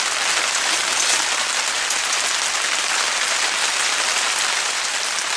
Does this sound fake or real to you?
real